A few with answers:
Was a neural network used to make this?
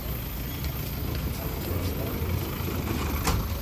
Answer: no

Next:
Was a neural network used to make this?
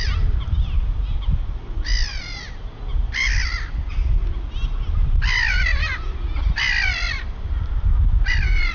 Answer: no